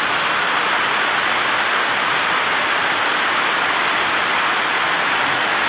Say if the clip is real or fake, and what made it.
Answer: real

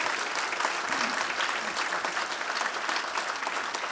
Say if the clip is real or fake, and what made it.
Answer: real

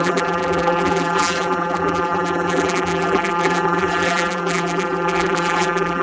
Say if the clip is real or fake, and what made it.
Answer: fake, vocoder, BigVGAN v2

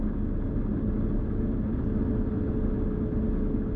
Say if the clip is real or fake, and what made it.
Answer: real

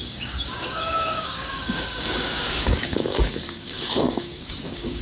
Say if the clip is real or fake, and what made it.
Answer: fake, codec, DAC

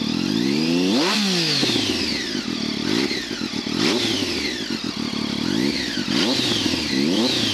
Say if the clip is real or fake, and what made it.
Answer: real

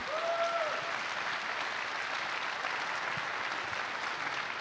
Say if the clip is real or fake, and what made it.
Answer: real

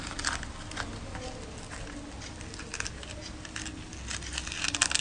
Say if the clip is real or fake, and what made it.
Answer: real